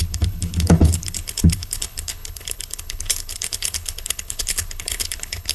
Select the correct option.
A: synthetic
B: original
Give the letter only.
A